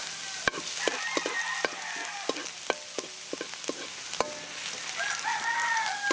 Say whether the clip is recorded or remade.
recorded